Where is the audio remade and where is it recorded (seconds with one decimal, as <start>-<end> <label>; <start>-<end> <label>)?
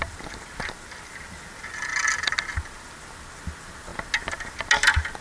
0.0-5.2 recorded